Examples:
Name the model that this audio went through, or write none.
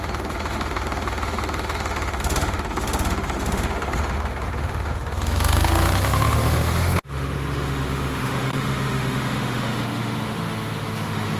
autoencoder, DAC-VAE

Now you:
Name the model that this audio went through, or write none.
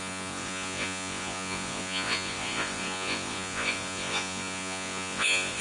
vocoder, Vocos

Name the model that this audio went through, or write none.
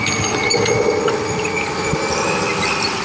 none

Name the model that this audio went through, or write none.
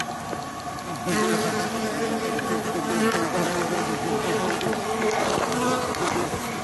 none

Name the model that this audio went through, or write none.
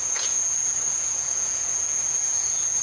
vocoder, Vocos